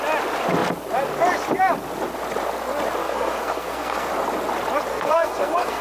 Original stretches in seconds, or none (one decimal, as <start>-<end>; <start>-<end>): 0.0-3.0; 4.1-4.9